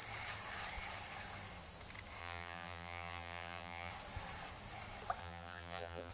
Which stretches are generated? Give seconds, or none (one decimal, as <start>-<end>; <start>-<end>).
2.2-3.9; 5.2-6.1